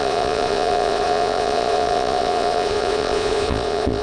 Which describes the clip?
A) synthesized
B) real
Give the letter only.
A